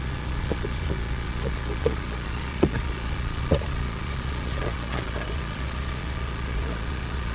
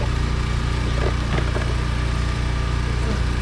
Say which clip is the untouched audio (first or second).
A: second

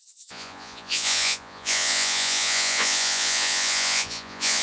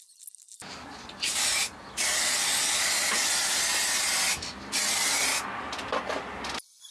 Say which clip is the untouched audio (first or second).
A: second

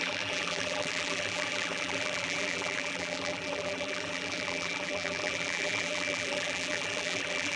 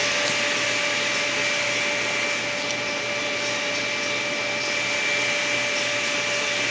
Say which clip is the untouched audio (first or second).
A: second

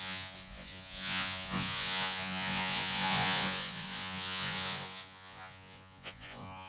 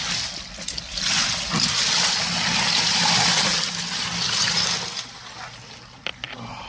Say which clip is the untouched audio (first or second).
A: second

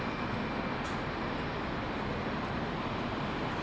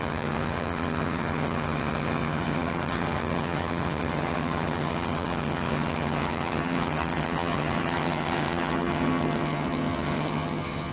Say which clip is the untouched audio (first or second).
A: first